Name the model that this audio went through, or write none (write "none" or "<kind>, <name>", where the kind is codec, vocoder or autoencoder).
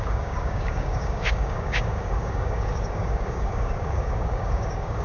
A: codec, DAC